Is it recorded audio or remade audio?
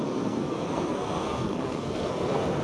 remade